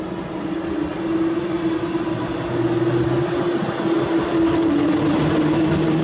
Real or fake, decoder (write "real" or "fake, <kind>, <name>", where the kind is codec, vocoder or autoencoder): real